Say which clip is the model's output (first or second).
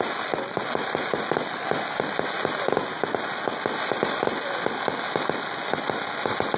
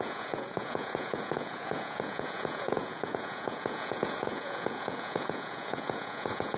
second